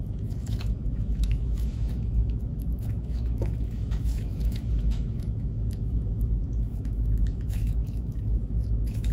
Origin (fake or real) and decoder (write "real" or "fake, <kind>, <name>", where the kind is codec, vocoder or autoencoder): fake, autoencoder, DAC-VAE